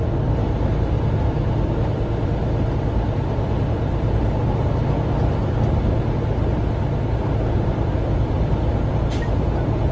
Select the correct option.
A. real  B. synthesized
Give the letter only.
A